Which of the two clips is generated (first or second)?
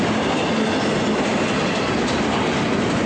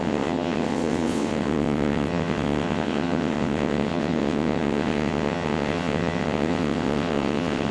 second